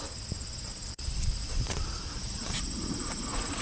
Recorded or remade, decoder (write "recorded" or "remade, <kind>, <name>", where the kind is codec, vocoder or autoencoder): remade, vocoder, Vocos